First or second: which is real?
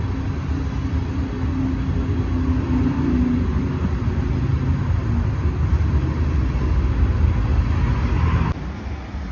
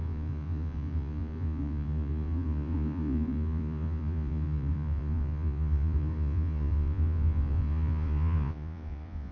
first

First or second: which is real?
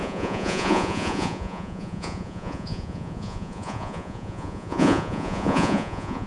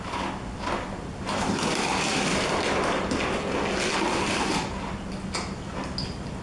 second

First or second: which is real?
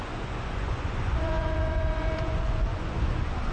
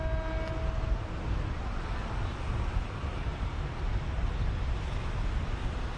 second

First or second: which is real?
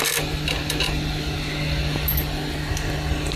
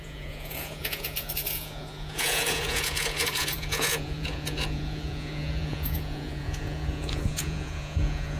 first